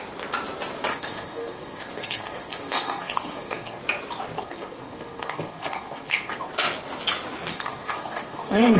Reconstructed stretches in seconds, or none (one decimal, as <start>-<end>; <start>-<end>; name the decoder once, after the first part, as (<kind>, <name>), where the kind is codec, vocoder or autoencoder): 0.9-3.8 (codec, SNAC); 4.4-6.5; 7.5-8.8